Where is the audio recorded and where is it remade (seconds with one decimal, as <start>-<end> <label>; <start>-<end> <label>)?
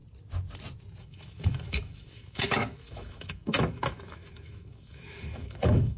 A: 0.0-1.0 recorded; 1.0-6.0 remade